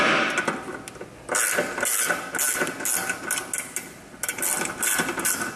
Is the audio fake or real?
real